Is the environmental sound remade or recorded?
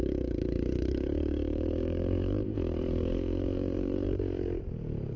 remade